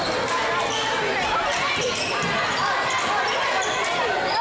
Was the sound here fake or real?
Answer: real